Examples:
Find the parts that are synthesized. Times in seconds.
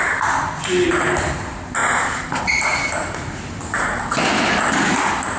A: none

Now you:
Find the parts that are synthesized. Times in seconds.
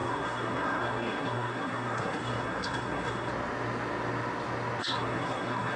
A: 0.0-3.3; 4.8-5.8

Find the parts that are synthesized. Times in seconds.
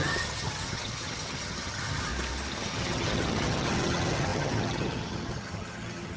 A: 0.0-2.1; 2.6-6.2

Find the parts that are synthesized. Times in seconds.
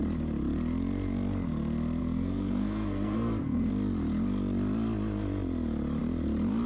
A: 2.0-3.7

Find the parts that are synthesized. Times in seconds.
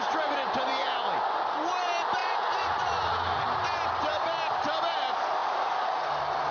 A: 2.2-3.1; 5.4-6.1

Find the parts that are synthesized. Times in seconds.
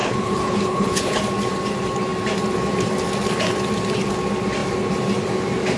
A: 0.0-1.2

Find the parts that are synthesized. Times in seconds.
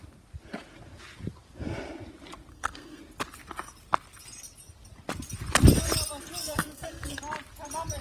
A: 2.5-3.0; 6.4-7.2